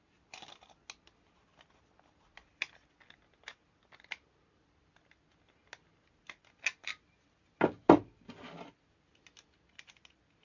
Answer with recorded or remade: recorded